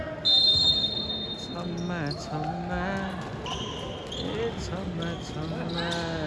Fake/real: real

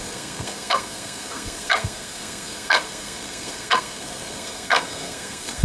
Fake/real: fake